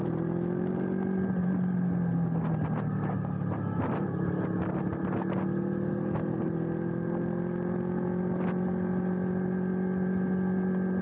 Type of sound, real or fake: real